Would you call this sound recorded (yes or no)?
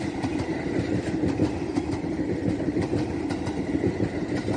yes